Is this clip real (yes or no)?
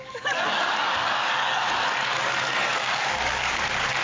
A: no